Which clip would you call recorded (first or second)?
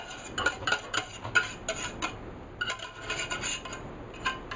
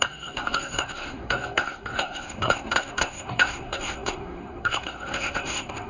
first